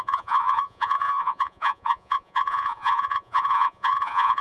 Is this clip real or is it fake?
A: fake